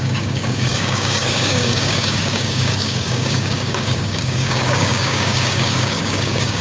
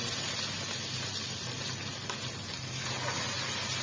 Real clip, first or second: second